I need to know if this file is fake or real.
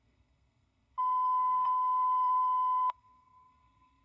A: fake